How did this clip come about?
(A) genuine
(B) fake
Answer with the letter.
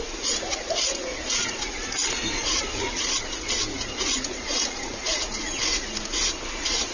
B